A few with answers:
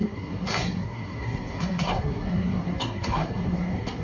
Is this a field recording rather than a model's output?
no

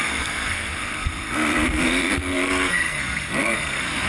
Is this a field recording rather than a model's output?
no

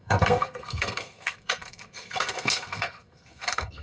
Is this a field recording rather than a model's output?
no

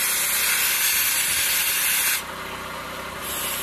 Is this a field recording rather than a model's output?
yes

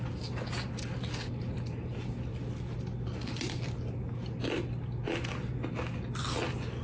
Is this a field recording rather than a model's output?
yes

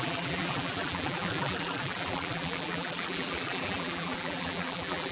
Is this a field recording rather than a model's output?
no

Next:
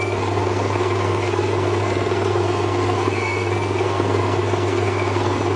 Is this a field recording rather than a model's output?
no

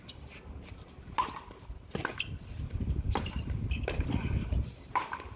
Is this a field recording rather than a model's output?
yes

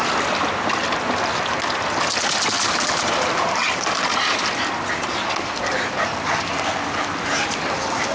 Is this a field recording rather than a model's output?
yes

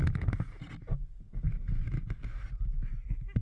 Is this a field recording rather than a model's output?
yes